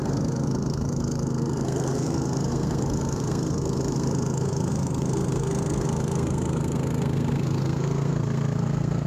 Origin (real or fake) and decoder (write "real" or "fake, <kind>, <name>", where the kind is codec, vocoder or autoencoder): fake, codec, SNAC